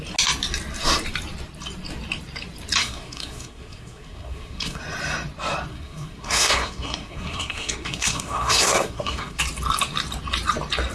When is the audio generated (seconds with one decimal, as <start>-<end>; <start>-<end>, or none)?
2.8-4.8; 5.7-9.4